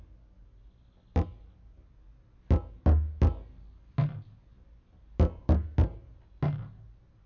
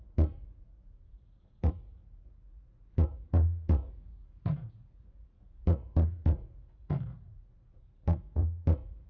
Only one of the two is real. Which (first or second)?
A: first